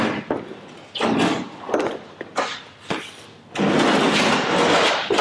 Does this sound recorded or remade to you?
recorded